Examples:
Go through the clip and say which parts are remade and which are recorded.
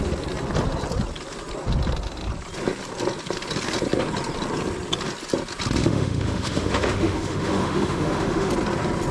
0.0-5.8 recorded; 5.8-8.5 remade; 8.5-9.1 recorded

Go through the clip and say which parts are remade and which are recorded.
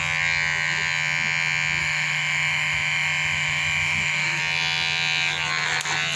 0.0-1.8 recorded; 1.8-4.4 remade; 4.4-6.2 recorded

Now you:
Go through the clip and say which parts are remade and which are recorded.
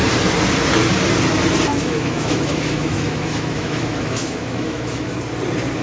0.0-1.7 recorded; 1.7-5.2 remade; 5.2-5.8 recorded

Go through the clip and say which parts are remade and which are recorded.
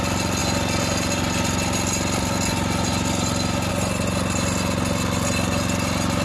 0.0-6.2 recorded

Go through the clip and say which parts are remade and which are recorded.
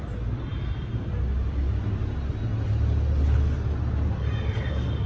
0.0-5.1 recorded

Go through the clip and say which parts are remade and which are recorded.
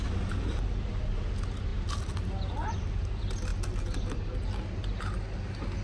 0.0-5.8 recorded